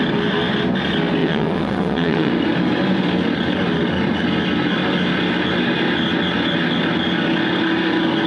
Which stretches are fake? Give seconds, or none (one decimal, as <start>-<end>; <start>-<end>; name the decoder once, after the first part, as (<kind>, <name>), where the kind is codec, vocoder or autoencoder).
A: 1.2-2.3 (vocoder, WaveNeXt)